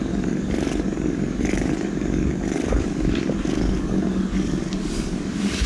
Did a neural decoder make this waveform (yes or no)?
yes